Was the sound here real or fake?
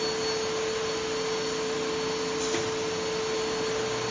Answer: real